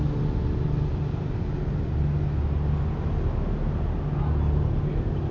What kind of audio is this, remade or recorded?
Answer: recorded